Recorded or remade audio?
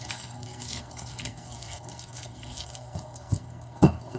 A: remade